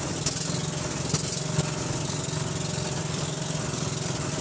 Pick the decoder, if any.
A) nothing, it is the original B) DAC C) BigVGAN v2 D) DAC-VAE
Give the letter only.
A